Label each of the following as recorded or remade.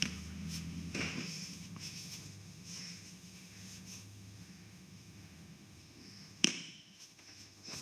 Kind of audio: remade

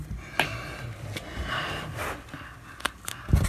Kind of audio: recorded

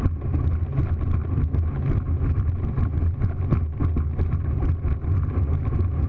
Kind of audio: recorded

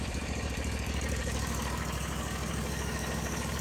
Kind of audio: remade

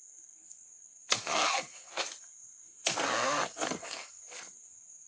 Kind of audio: remade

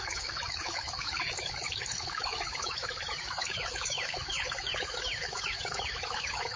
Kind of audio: remade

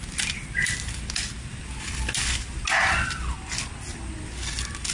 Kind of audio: recorded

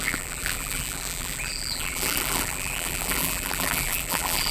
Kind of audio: remade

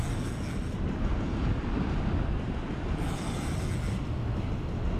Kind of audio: recorded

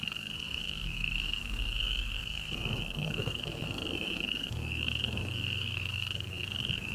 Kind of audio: remade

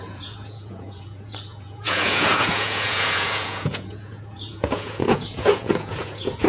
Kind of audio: remade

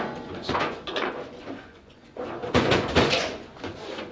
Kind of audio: remade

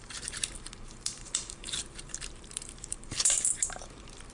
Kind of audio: remade